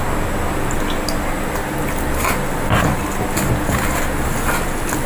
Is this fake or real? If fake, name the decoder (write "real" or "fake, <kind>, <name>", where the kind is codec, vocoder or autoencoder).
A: real